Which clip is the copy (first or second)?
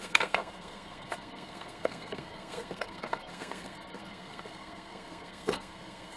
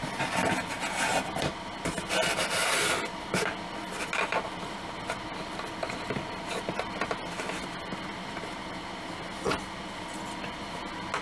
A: first